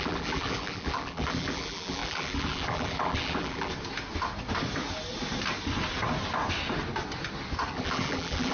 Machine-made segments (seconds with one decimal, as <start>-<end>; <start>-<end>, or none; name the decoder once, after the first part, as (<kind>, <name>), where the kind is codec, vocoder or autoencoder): 0.0-3.7 (vocoder, BigVGAN v2); 7.7-8.5